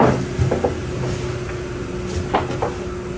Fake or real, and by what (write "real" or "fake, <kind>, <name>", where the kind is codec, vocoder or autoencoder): real